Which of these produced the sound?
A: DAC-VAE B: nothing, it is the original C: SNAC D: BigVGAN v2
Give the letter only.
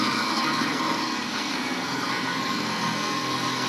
C